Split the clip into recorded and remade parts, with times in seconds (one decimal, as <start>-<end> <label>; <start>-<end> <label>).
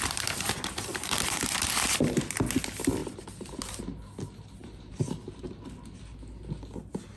0.0-0.9 recorded; 0.9-1.7 remade; 1.7-3.0 recorded; 3.0-3.6 remade; 3.6-4.6 recorded; 4.6-5.5 remade; 5.5-7.2 recorded